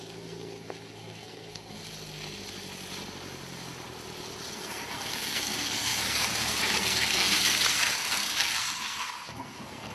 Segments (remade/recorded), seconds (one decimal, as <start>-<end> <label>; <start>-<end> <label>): 0.0-1.8 remade; 1.8-4.5 recorded; 4.5-9.9 remade